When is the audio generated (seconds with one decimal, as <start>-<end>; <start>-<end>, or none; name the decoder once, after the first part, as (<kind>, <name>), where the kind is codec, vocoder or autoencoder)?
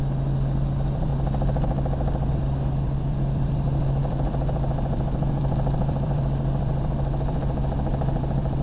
0.0-1.1 (vocoder, BigVGAN v2); 2.3-8.6